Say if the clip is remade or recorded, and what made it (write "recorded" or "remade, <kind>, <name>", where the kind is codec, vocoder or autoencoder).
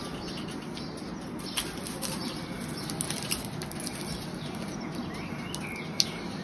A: recorded